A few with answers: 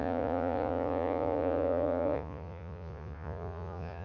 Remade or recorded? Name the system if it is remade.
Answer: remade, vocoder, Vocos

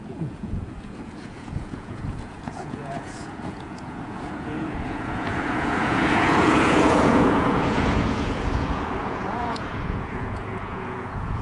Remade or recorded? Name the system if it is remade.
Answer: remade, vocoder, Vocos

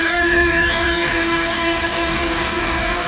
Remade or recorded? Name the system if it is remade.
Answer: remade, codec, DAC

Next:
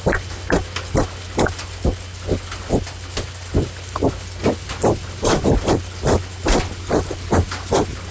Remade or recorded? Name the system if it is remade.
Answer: recorded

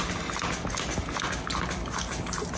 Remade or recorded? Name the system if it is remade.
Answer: recorded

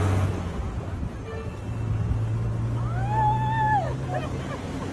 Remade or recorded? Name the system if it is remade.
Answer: recorded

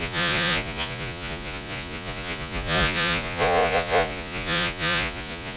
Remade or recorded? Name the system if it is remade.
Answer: remade, vocoder, Vocos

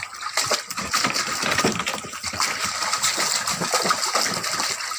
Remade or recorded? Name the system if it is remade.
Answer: recorded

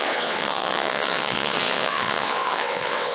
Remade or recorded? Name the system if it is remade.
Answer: remade, vocoder, WaveNeXt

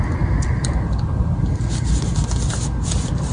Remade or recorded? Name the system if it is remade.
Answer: recorded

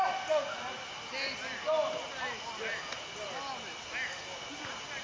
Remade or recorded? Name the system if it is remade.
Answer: recorded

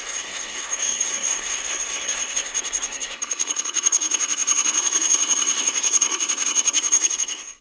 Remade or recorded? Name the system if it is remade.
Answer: remade, codec, SNAC